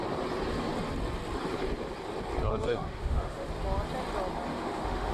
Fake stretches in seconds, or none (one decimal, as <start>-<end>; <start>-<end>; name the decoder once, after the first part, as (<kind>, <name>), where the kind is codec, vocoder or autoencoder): 2.5-3.5 (autoencoder, DAC-VAE); 4.5-5.1